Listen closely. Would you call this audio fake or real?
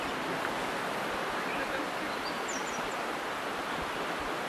real